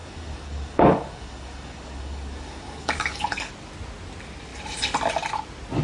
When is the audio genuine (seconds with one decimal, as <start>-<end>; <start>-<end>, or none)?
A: 3.5-5.8